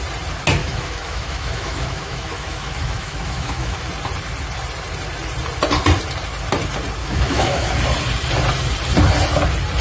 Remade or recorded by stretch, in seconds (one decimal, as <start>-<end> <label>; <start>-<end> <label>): 0.0-0.6 recorded; 0.6-3.9 remade; 3.9-7.0 recorded; 7.0-7.7 remade; 7.7-9.8 recorded